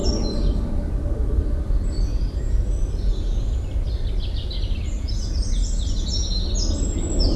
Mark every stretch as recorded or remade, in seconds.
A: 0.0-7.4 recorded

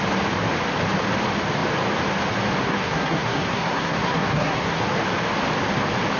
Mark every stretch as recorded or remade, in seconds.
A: 0.0-2.6 recorded; 2.6-4.8 remade; 4.8-6.2 recorded

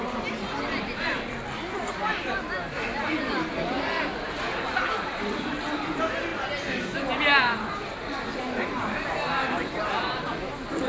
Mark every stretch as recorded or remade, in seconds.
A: 0.0-10.9 recorded